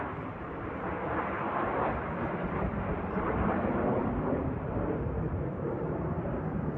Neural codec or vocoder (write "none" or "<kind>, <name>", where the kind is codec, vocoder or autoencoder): vocoder, BigVGAN v2